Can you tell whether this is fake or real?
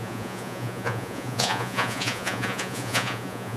fake